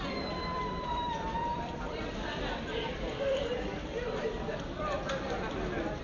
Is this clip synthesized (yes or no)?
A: yes